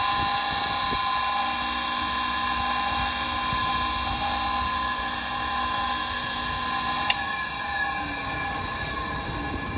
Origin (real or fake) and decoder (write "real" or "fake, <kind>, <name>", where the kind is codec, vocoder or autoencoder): real